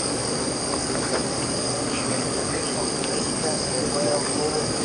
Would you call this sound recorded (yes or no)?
no